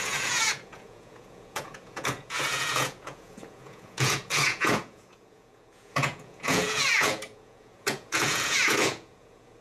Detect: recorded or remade remade